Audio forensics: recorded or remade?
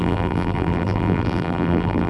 remade